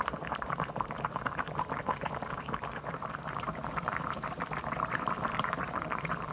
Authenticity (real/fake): fake